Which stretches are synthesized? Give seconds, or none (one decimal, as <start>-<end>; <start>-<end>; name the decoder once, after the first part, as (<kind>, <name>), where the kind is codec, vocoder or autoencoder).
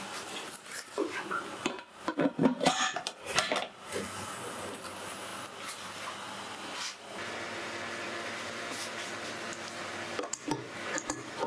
none